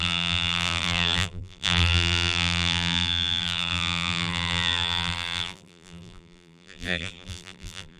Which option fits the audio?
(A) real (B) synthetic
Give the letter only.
B